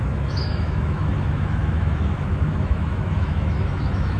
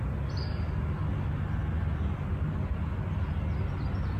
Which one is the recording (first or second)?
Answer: second